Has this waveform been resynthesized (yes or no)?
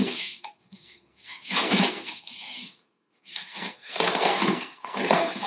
yes